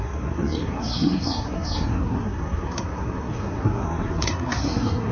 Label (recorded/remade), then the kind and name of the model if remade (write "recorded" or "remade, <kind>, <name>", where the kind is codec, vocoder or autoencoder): remade, codec, SNAC